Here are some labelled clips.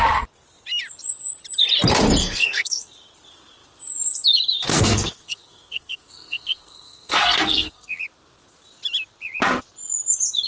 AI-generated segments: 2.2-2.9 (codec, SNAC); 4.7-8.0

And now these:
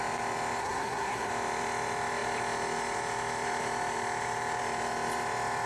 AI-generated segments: 0.6-1.3 (codec, SNAC)

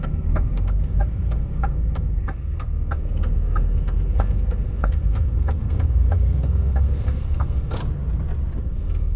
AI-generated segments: 0.0-7.8 (codec, SNAC); 8.6-9.2